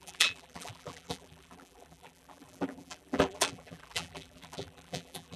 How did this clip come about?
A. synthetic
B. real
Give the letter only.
A